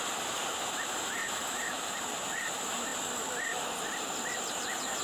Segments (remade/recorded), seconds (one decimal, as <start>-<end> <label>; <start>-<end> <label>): 0.0-2.9 remade; 2.9-4.5 recorded; 4.5-5.0 remade